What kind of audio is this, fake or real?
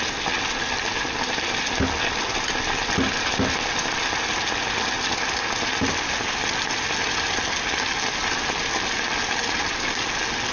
real